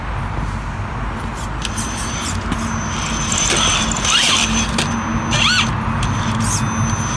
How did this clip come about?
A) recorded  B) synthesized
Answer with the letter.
A